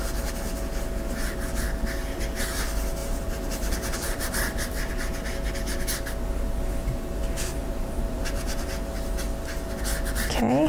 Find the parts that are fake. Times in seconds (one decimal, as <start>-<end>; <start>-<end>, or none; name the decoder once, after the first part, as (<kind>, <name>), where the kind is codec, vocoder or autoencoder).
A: 3.0-4.9 (vocoder, BigVGAN v2); 7.6-8.7